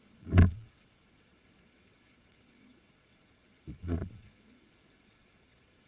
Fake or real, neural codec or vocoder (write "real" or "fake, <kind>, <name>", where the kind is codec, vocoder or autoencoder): fake, vocoder, Vocos